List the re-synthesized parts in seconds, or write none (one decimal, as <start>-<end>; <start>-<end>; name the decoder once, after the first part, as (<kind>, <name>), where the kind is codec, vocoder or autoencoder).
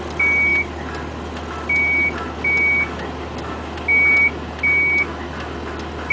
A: none